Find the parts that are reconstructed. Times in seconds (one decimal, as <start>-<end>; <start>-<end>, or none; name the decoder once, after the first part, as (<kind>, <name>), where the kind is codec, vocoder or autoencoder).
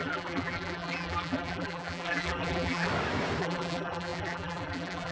0.0-2.9 (vocoder, BigVGAN v2); 3.4-5.1